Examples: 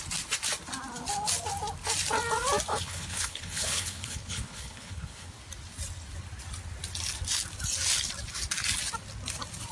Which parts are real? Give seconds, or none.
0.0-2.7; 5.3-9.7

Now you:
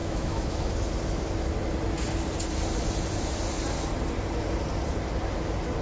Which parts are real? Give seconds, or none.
0.7-5.8

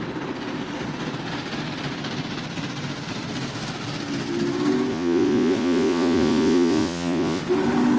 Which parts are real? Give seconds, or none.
0.0-4.9; 7.4-8.0